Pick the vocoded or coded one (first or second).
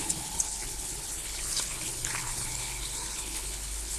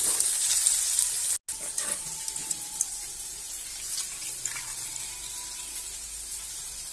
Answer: first